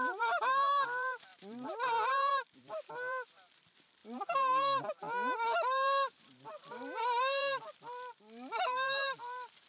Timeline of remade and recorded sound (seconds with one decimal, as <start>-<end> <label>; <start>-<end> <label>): 0.0-9.7 remade